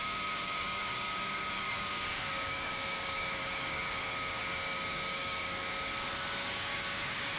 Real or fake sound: fake